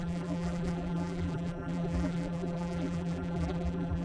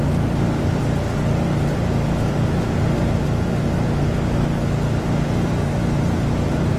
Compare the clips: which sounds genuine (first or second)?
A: second